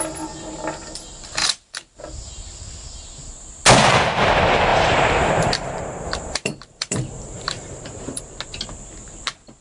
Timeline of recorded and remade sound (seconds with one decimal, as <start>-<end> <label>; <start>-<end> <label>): 0.0-1.4 recorded; 1.4-2.0 remade; 2.0-4.7 recorded; 4.7-8.2 remade; 8.2-9.6 recorded